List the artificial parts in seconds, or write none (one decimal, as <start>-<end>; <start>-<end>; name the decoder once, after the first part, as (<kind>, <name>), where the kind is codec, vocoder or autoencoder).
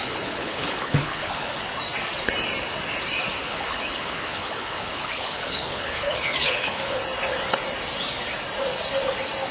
0.0-1.6 (codec, HILCodec); 3.4-7.0